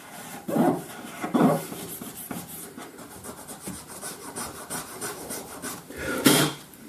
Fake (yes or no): yes